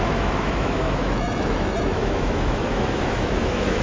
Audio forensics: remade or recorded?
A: remade